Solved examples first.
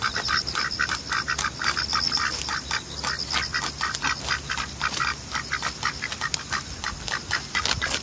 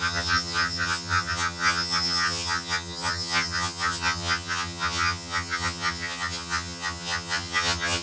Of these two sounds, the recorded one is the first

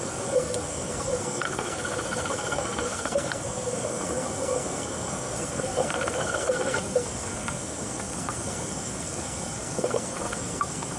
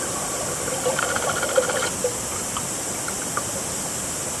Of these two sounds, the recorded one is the second